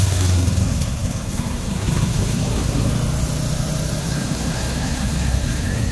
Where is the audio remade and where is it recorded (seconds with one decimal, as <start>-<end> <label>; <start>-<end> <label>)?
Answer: 0.0-2.9 remade; 2.9-4.0 recorded; 4.0-5.9 remade